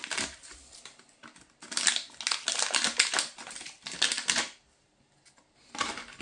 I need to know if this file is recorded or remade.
recorded